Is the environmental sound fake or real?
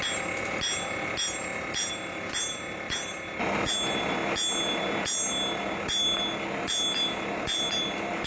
real